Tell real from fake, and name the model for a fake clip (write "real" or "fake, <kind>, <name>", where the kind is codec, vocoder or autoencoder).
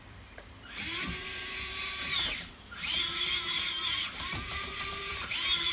fake, vocoder, BigVGAN v2